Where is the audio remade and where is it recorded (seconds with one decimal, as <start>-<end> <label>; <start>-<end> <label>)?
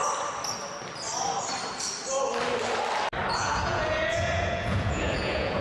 0.0-3.4 recorded; 3.4-5.6 remade